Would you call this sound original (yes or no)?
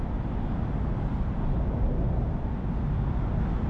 yes